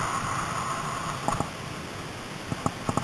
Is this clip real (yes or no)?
yes